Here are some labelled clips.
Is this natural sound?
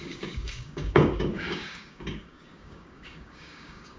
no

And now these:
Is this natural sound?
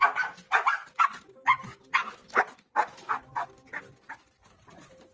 yes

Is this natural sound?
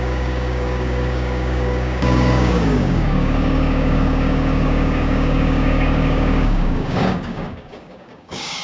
no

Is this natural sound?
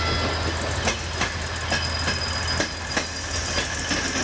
yes